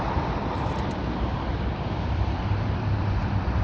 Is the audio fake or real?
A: fake